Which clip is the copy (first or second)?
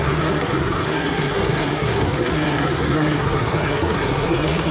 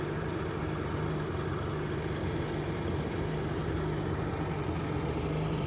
first